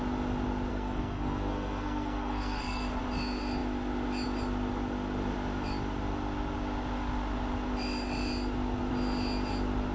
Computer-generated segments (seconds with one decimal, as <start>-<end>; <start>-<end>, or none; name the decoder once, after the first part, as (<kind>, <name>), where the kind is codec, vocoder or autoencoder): 0.7-3.0 (codec, SNAC)